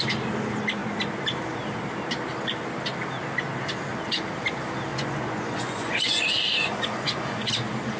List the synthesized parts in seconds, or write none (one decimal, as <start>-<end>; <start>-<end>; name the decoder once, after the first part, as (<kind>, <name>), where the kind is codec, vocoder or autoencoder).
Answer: 4.9-7.5 (vocoder, Vocos)